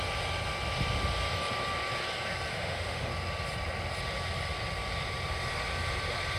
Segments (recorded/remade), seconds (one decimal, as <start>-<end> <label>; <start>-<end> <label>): 0.0-2.5 recorded; 2.5-3.1 remade; 3.1-6.4 recorded